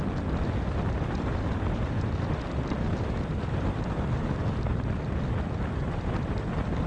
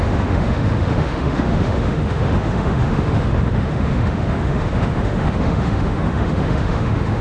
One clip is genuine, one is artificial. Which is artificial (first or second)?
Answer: second